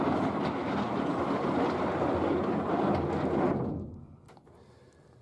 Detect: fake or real real